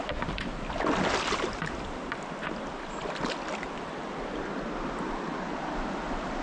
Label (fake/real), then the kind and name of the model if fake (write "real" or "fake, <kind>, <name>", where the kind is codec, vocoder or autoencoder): real